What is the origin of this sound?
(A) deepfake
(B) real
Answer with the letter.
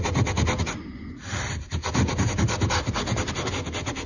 B